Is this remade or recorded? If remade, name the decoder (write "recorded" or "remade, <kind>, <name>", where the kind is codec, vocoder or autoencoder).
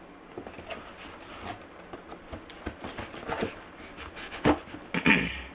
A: recorded